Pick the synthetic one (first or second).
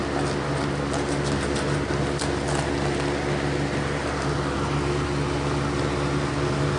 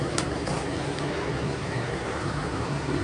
second